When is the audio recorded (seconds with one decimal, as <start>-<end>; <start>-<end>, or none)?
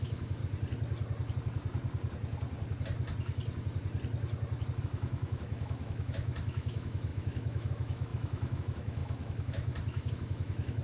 0.4-4.8